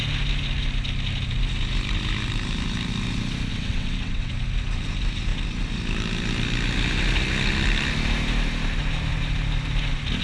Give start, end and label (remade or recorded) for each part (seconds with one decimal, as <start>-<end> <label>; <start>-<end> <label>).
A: 0.0-3.5 recorded; 3.5-4.3 remade; 4.3-10.2 recorded